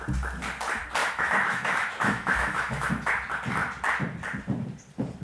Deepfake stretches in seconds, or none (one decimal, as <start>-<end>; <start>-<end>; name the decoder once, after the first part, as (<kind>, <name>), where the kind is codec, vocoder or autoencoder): 1.0-3.1 (autoencoder, DAC-VAE)